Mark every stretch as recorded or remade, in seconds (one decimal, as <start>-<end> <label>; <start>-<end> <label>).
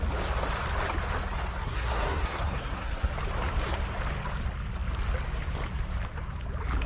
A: 0.0-1.6 recorded; 1.6-3.1 remade; 3.1-6.9 recorded